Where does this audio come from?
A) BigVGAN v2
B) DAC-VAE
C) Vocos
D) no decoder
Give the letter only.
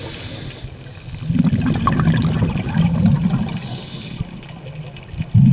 D